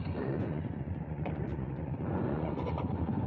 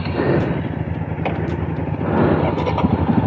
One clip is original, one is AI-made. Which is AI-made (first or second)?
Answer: first